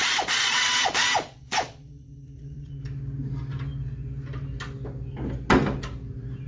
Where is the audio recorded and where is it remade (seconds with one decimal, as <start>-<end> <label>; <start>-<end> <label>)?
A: 0.0-2.8 remade; 2.8-6.5 recorded